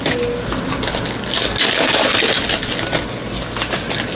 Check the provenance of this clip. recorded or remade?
recorded